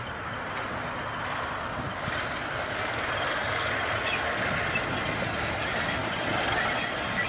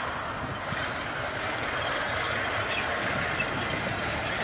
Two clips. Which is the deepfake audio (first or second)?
second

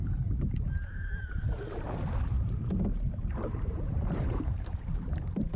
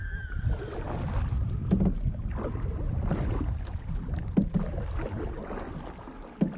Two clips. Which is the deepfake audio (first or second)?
first